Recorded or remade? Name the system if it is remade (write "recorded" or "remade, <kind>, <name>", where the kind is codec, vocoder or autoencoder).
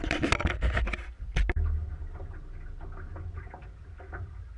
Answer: recorded